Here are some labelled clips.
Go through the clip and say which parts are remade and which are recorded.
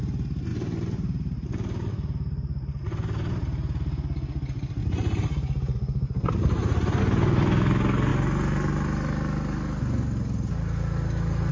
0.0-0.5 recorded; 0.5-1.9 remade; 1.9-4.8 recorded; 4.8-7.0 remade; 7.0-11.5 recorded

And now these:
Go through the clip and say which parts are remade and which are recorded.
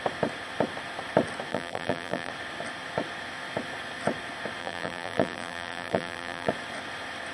0.0-1.5 recorded; 1.5-2.3 remade; 2.3-4.6 recorded; 4.6-6.5 remade; 6.5-7.3 recorded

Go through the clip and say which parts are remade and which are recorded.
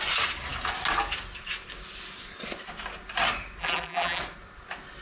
0.0-3.6 recorded; 3.6-4.2 remade; 4.2-5.0 recorded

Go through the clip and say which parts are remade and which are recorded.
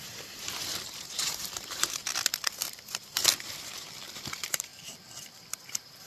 0.0-2.0 remade; 2.0-4.1 recorded; 4.1-4.7 remade; 4.7-5.5 recorded; 5.5-6.1 remade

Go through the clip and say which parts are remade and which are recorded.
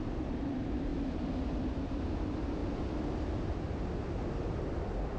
0.0-0.9 remade; 0.9-1.8 recorded; 1.8-2.6 remade; 2.6-4.4 recorded; 4.4-5.2 remade